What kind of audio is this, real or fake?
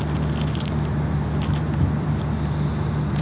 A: real